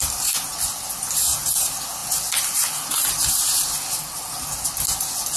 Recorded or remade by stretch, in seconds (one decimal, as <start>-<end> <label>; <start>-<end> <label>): 0.0-5.4 recorded